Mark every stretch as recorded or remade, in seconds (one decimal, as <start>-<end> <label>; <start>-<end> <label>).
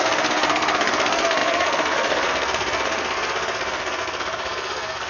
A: 0.0-5.1 remade